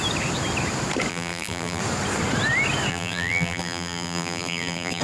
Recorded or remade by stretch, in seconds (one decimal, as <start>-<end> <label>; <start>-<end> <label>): 0.0-1.1 recorded; 1.1-1.8 remade; 1.8-2.9 recorded; 2.9-5.0 remade